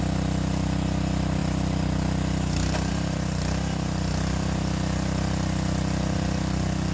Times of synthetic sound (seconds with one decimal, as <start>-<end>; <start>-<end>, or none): none

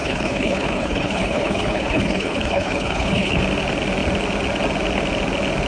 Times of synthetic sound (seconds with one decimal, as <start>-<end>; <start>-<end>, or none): 0.0-3.4